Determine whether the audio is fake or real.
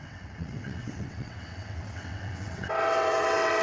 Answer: fake